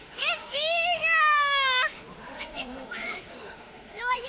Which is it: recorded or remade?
remade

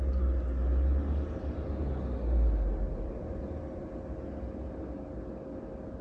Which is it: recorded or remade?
recorded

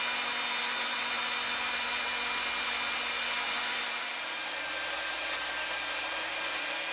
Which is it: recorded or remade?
recorded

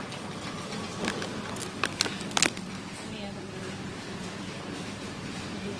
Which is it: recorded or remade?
recorded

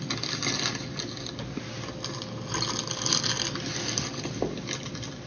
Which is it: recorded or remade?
recorded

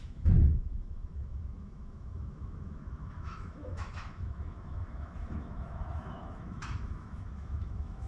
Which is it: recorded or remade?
remade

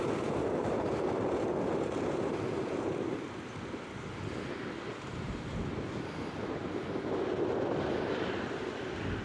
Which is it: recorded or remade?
recorded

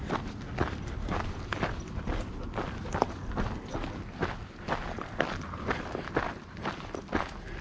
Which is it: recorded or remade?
recorded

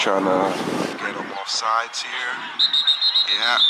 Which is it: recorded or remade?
recorded